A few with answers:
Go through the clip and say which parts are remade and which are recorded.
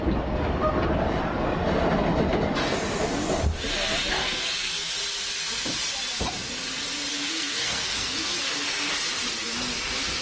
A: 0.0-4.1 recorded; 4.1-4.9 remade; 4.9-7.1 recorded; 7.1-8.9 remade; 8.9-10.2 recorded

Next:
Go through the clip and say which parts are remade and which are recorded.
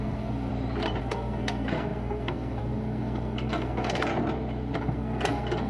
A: 0.0-0.5 remade; 0.5-1.0 recorded; 1.0-4.1 remade; 4.1-4.8 recorded; 4.8-5.7 remade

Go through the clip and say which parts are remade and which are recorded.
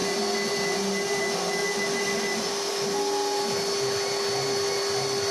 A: 0.0-5.3 recorded